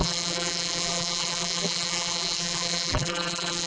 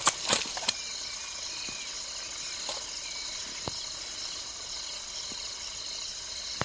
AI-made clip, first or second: first